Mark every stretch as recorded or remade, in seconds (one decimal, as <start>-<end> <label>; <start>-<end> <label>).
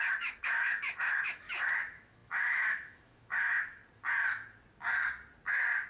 0.0-3.8 remade; 3.8-5.9 recorded